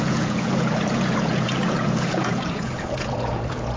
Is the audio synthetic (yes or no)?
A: yes